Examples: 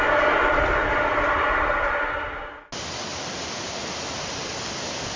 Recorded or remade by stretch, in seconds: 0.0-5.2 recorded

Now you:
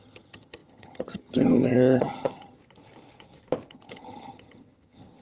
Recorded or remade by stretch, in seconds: 0.0-2.6 remade; 2.6-3.7 recorded; 3.7-5.2 remade